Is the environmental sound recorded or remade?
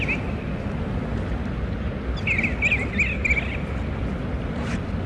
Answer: recorded